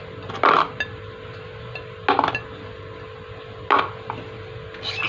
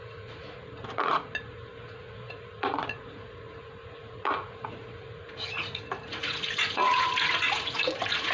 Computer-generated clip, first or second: second